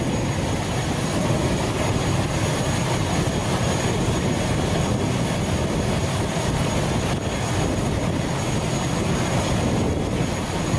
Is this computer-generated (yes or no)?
no